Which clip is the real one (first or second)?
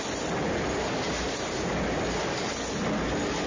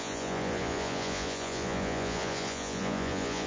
first